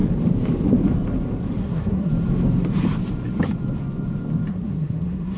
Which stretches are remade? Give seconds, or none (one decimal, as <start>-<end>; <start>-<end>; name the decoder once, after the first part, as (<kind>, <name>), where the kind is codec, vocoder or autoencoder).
1.6-2.1 (codec, SNAC); 4.5-5.4